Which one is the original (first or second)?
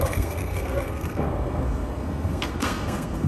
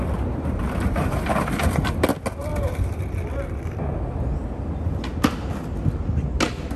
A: second